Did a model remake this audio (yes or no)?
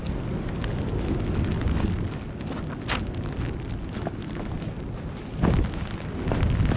no